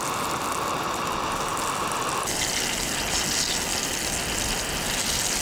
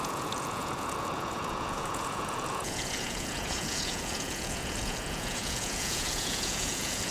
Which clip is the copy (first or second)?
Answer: second